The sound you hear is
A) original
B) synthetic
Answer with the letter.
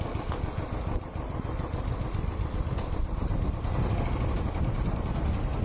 A